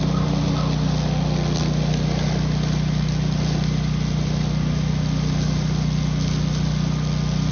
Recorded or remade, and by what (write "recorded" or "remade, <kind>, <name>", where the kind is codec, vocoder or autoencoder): recorded